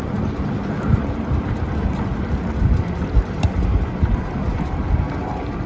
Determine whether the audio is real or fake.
real